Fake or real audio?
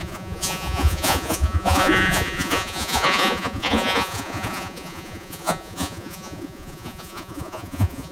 fake